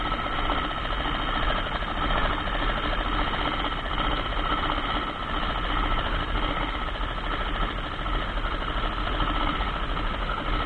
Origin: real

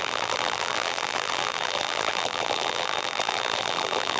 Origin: fake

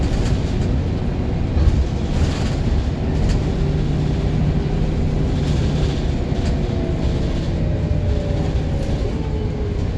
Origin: real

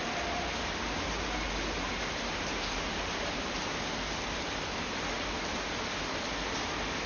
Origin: real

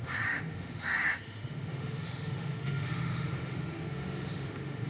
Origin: fake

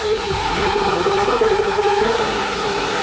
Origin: fake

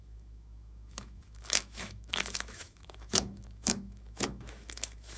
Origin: fake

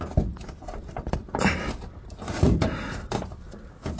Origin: real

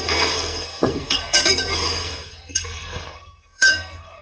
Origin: fake